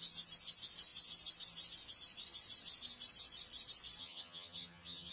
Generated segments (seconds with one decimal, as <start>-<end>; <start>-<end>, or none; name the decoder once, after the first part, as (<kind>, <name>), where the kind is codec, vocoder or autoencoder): 4.0-5.1 (vocoder, HiFi-GAN)